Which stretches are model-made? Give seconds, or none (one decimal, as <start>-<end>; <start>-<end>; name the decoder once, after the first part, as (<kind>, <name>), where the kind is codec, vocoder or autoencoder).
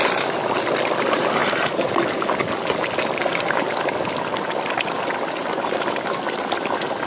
1.4-1.9 (vocoder, BigVGAN v2)